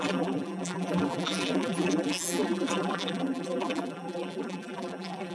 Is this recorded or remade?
remade